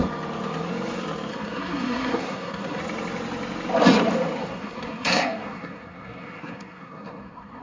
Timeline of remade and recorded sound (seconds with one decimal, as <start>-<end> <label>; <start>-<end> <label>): 0.0-1.3 recorded; 1.3-2.8 remade; 2.8-4.4 recorded; 4.4-7.6 remade